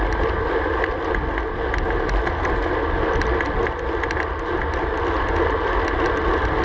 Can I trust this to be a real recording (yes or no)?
yes